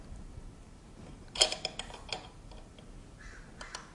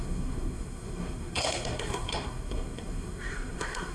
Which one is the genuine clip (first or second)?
first